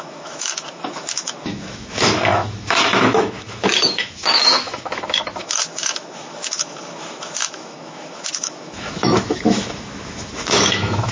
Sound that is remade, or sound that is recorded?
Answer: remade